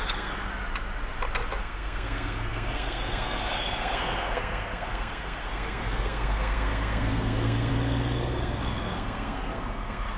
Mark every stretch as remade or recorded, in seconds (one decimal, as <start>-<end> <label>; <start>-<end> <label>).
0.0-0.5 remade; 0.5-1.6 recorded; 1.6-10.2 remade